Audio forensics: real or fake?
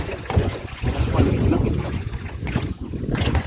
fake